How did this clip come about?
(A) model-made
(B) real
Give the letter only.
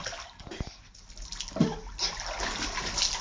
B